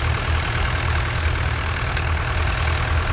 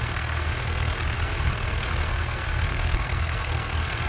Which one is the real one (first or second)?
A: first